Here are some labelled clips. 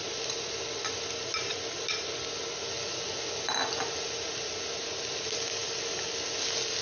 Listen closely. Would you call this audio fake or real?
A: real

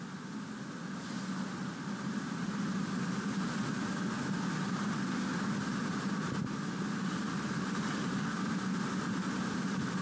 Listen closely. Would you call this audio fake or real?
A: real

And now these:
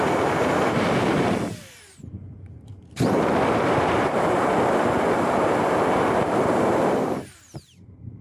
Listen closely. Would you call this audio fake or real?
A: fake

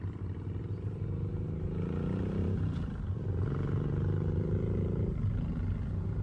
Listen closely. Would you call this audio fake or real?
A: real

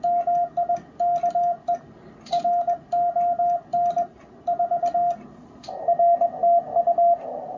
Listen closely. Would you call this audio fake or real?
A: real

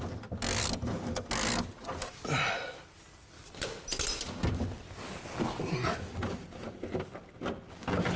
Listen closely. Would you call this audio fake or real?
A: real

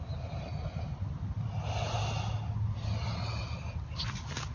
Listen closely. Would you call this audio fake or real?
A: real